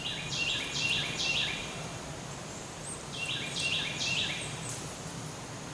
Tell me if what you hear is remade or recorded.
recorded